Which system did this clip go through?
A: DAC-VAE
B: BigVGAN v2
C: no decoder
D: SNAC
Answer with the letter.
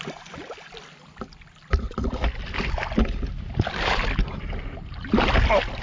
C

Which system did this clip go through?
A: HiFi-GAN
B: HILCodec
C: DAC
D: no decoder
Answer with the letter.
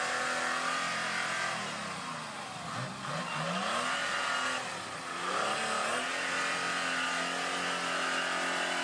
D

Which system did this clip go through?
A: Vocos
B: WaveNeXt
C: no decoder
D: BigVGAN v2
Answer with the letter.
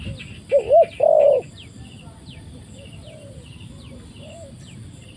C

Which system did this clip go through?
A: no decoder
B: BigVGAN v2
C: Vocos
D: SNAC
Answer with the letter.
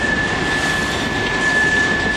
A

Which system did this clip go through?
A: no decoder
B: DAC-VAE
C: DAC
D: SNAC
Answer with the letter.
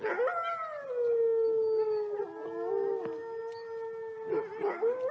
A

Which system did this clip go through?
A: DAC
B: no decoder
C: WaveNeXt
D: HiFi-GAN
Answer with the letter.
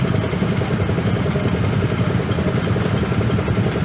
B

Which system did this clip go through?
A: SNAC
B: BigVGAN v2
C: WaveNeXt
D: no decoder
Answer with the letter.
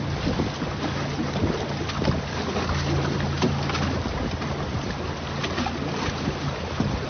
D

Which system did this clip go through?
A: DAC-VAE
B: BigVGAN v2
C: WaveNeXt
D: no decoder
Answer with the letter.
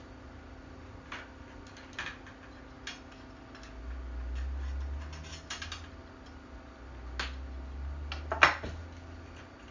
D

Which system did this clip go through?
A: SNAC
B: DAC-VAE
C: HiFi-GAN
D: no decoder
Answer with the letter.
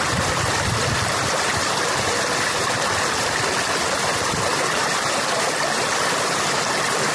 D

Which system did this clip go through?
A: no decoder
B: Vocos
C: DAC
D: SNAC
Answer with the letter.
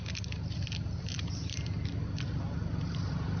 A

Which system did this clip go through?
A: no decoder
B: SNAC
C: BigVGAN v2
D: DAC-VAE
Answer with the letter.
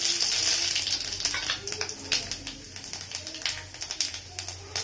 A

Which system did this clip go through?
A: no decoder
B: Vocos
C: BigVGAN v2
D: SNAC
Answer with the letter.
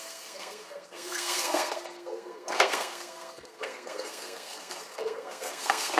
D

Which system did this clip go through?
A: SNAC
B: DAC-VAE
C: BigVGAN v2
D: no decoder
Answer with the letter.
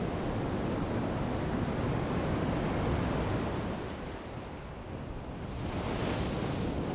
D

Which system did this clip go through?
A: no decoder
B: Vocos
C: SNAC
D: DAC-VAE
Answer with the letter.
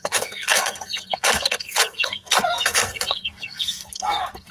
C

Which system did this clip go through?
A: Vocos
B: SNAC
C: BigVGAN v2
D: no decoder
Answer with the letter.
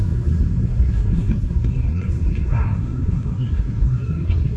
B